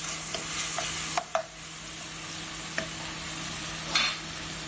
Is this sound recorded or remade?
recorded